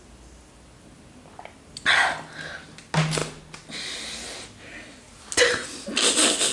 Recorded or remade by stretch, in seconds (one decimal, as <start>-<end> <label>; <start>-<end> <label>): 0.0-6.5 recorded